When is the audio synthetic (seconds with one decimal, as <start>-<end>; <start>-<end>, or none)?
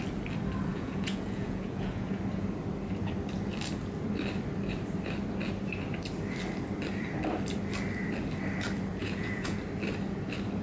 0.7-2.2; 9.0-9.6